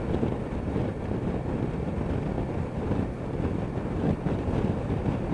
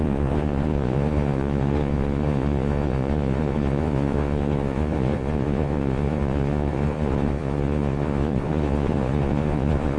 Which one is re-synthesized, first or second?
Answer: second